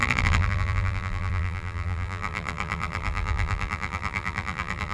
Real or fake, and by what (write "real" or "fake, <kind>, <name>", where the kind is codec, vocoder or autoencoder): fake, vocoder, BigVGAN v2